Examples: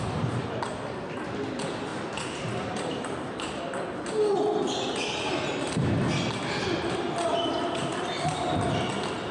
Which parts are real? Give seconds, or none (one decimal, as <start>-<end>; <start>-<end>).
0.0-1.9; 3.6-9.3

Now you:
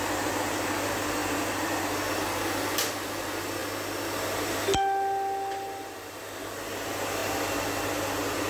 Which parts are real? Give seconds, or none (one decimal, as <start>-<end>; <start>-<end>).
0.0-8.5

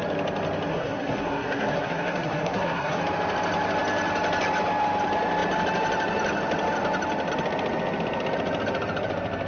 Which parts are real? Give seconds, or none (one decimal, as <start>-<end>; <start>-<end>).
0.0-0.7; 3.0-9.5

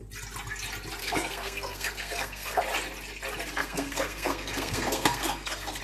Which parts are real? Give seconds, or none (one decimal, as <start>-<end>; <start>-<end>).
0.0-1.0; 2.6-3.6